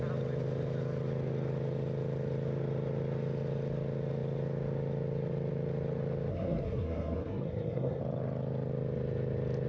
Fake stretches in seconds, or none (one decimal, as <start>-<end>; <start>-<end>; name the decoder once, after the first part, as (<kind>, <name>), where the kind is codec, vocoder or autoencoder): 6.3-8.0 (codec, SNAC)